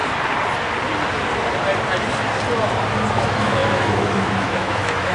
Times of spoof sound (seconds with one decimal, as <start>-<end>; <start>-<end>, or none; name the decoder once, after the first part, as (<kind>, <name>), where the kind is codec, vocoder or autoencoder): 3.1-5.1 (autoencoder, DAC-VAE)